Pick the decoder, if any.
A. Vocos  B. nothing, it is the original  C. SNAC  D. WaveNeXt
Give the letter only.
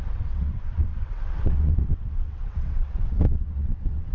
D